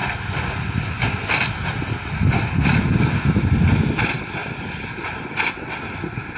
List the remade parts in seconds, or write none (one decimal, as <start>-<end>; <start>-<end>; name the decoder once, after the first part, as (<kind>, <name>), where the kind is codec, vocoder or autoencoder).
none